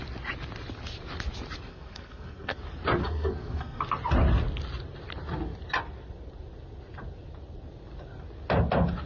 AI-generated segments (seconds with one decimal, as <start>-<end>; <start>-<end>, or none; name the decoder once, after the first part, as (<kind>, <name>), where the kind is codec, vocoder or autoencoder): 1.7-2.6 (codec, SNAC); 3.0-3.8